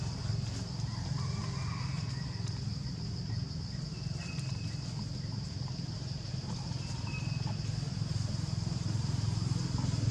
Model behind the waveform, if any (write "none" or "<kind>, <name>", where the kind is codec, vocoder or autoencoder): none